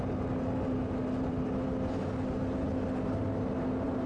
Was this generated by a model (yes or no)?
no